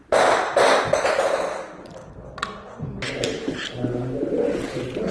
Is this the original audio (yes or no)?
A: yes